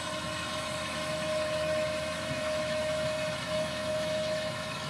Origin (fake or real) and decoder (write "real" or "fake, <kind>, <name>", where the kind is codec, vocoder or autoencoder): fake, autoencoder, DAC-VAE